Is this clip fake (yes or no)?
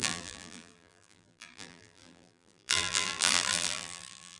yes